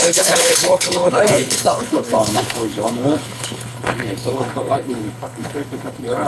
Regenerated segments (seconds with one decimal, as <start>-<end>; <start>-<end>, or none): 0.0-6.3